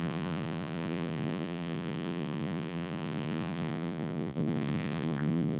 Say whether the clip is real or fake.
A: fake